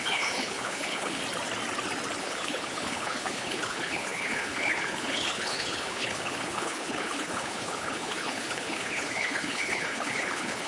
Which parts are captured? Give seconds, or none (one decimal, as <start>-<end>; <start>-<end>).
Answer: 1.2-2.2